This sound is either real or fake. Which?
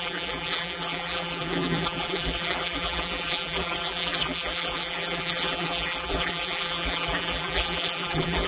fake